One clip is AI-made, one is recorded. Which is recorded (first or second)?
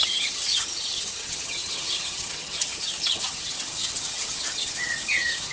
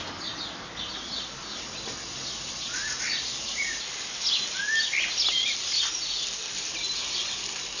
second